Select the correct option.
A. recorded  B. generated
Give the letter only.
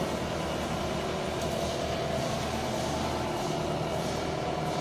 A